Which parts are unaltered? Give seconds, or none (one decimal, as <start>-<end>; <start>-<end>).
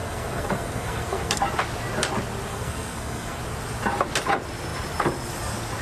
1.4-2.5; 3.4-5.8